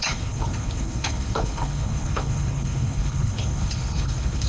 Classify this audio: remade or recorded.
remade